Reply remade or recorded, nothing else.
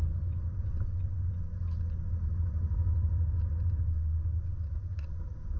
recorded